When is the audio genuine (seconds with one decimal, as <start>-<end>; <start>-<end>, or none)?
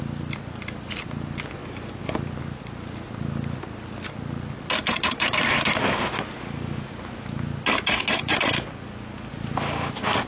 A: 0.0-10.3